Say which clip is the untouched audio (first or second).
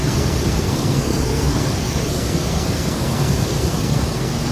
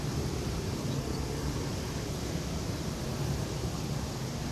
second